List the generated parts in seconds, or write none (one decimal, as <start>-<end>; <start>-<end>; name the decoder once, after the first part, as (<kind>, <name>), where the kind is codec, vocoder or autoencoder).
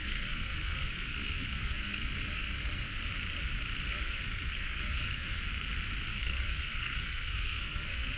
0.0-3.1 (codec, SNAC); 3.9-5.4; 6.1-8.2